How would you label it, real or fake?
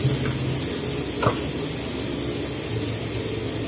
real